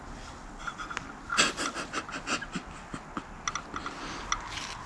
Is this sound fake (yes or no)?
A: no